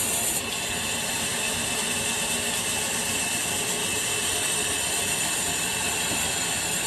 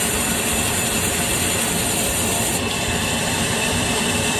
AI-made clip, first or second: second